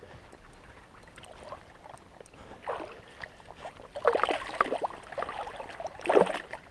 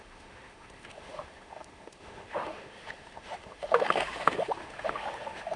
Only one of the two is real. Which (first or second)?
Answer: first